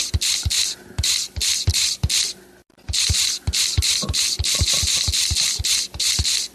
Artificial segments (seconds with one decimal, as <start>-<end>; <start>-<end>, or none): none

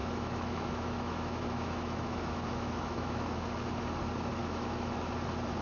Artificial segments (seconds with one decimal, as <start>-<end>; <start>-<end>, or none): 0.0-3.4; 4.4-5.1